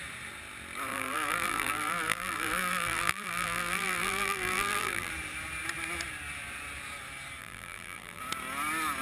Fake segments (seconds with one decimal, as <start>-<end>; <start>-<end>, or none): 0.9-5.1; 7.4-8.2